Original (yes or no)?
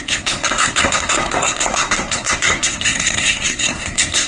no